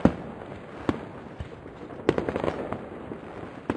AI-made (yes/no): no